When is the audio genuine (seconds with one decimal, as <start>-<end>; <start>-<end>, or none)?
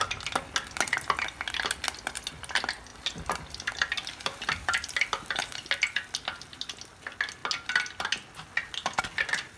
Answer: 0.0-2.9; 5.7-9.6